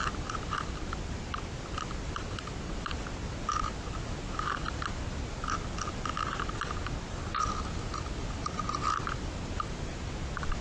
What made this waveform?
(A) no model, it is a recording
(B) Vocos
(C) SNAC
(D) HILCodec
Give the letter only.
A